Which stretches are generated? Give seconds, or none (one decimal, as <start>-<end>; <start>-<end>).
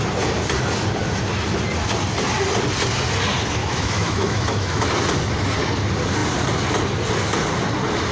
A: 3.6-4.8